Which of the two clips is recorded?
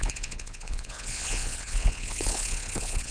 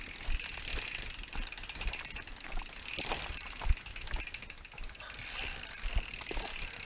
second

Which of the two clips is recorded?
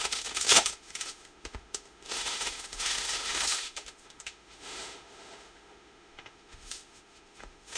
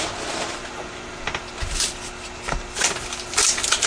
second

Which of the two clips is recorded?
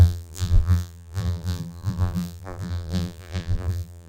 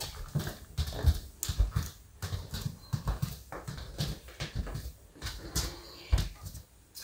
second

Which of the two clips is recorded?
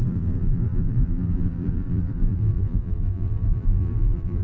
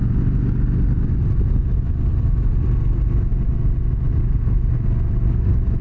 second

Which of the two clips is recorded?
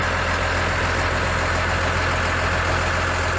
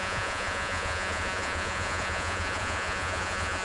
first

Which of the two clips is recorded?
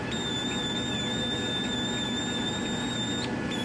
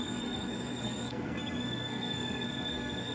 first